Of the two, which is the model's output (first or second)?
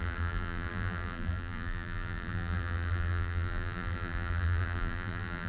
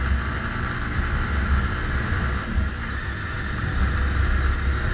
first